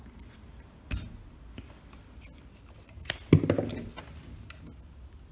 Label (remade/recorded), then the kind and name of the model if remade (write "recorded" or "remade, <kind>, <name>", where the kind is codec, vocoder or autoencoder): recorded